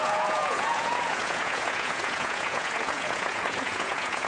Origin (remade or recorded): remade